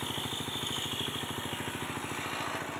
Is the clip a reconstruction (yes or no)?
no